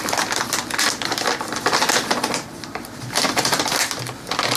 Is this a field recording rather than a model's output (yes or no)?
yes